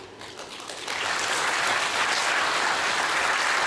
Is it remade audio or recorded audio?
recorded